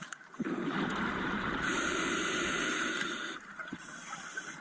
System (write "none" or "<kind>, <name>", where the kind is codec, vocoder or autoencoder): vocoder, BigVGAN v2